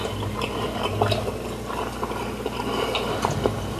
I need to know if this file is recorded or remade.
recorded